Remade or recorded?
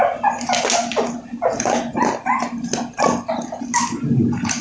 recorded